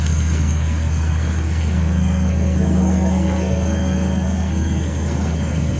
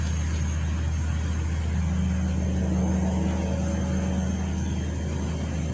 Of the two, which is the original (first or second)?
second